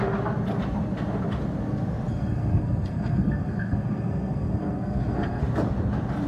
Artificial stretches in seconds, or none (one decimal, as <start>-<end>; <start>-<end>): 2.1-5.4